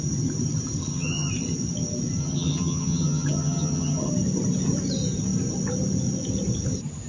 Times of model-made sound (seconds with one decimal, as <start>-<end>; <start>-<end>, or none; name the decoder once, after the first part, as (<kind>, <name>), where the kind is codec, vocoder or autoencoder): 0.8-1.3 (vocoder, HiFi-GAN); 2.2-4.1